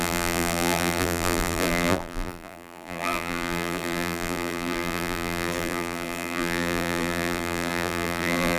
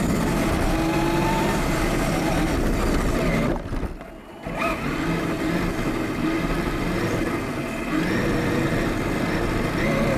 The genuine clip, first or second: second